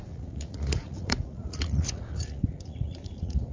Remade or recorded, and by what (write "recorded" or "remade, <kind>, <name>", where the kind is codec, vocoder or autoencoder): remade, vocoder, Vocos